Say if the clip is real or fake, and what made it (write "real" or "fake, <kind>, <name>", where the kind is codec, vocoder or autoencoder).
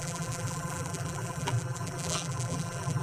fake, vocoder, BigVGAN v2